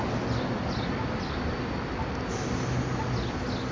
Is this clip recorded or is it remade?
recorded